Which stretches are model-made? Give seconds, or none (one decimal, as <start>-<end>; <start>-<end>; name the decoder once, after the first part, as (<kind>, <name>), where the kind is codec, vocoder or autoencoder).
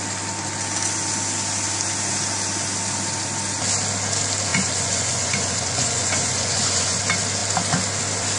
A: 4.5-7.0 (vocoder, Vocos)